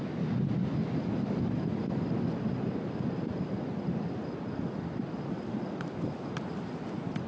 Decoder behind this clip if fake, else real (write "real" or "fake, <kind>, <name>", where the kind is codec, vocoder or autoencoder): real